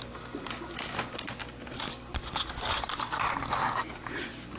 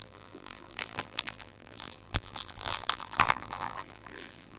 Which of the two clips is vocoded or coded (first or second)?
second